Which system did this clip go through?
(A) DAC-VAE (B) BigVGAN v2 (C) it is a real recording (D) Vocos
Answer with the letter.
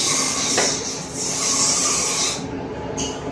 C